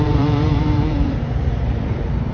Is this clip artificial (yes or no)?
yes